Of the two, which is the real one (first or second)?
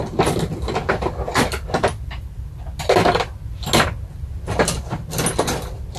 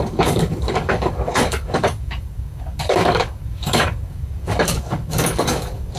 first